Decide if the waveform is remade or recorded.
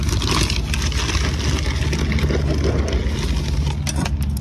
recorded